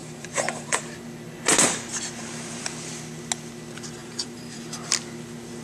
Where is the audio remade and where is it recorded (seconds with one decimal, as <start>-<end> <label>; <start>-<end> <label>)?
0.0-0.8 remade; 0.8-2.2 recorded; 2.2-2.9 remade; 2.9-4.0 recorded; 4.0-4.6 remade; 4.6-5.6 recorded